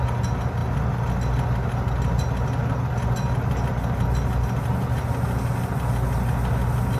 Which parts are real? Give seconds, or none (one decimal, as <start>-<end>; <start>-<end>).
0.0-7.0